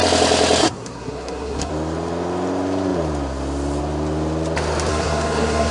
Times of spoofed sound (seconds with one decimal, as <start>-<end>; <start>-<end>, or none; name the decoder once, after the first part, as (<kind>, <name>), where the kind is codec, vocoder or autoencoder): 0.6-1.7 (codec, SNAC); 4.9-5.7